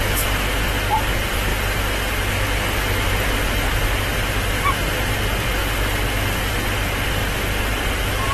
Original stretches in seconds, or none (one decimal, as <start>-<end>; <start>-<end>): 0.0-1.5; 2.2-5.6; 6.5-7.2